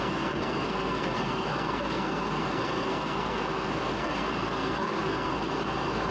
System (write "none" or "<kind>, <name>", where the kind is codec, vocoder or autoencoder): codec, SNAC